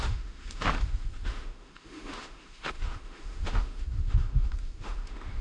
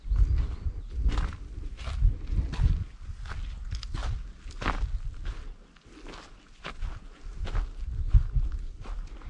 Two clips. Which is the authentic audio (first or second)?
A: second